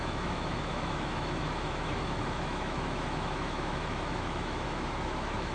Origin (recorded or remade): remade